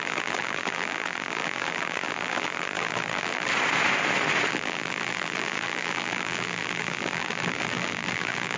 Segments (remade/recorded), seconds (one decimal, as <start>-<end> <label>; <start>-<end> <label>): 0.0-3.5 remade; 3.5-4.5 recorded; 4.5-8.6 remade

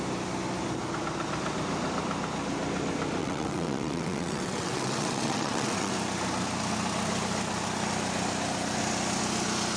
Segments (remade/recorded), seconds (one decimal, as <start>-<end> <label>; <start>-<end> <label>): 0.0-3.2 recorded; 3.2-5.9 remade; 5.9-9.8 recorded

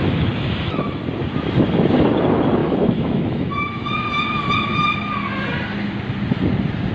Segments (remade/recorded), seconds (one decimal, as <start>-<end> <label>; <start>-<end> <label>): 0.0-1.0 remade; 1.0-2.6 recorded; 2.6-4.2 remade; 4.2-6.9 recorded

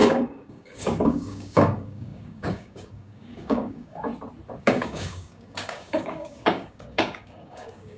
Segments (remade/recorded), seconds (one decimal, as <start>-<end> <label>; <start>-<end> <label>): 0.0-4.1 remade; 4.1-4.6 recorded; 4.6-8.0 remade

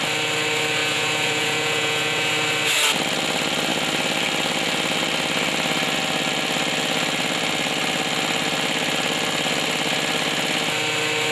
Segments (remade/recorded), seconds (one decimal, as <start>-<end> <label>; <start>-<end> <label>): 0.0-0.8 recorded; 0.8-2.3 remade; 2.3-11.3 recorded

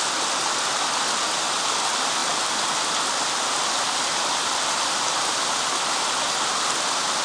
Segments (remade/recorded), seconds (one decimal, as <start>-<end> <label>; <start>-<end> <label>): 0.0-7.2 recorded

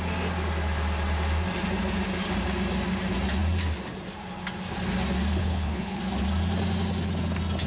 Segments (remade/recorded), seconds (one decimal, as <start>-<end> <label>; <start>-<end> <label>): 0.0-5.4 recorded; 5.4-6.0 remade; 6.0-7.7 recorded